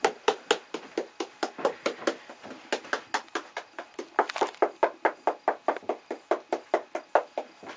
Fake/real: real